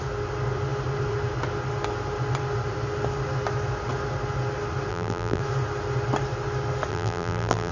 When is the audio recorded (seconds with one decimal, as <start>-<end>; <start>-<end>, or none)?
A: 0.0-4.9; 5.4-6.9